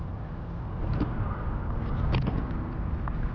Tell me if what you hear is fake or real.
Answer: real